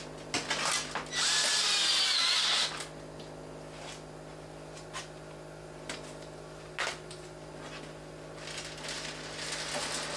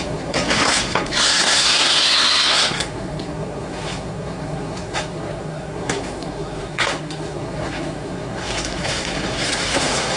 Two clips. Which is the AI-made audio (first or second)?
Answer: second